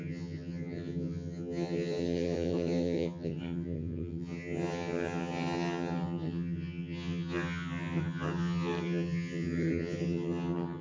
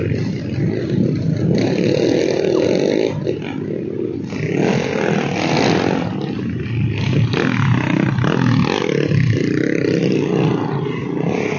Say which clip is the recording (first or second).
second